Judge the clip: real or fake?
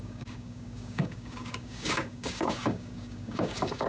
fake